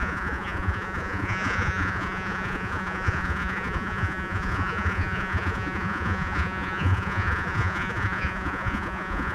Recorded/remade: remade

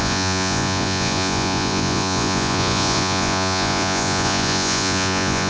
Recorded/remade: remade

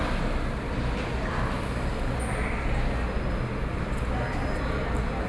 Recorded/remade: recorded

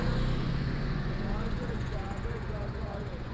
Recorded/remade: remade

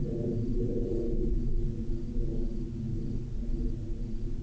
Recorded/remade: recorded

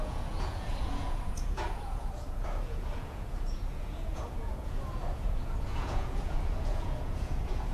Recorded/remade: remade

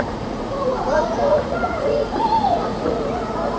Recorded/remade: remade